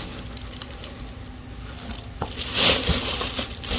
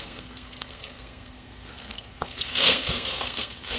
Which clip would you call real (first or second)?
first